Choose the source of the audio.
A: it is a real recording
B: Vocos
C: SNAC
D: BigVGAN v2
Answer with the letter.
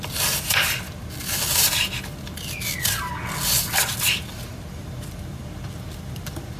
A